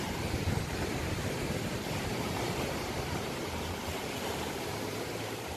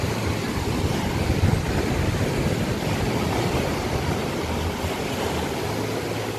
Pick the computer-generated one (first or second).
first